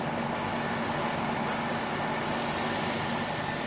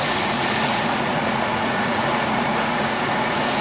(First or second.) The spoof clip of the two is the second